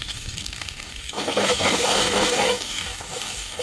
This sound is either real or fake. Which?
fake